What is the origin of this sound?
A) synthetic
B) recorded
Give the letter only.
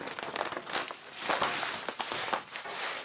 B